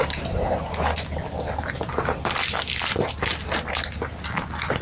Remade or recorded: recorded